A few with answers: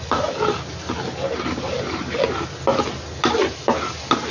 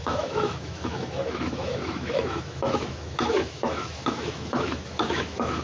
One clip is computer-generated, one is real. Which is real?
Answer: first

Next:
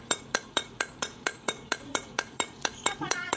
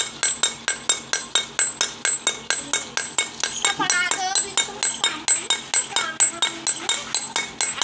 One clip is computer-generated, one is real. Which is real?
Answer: second